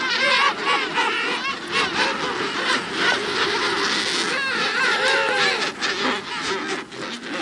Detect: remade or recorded recorded